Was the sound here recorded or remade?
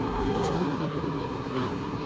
remade